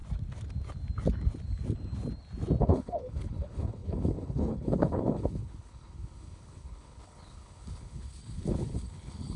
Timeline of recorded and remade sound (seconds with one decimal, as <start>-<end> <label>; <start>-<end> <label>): 0.0-2.6 recorded; 2.6-9.4 remade